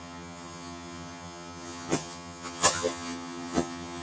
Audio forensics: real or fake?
fake